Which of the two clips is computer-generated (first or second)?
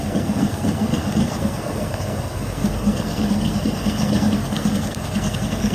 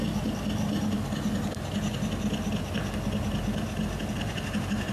first